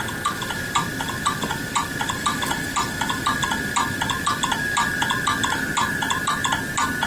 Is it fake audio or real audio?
real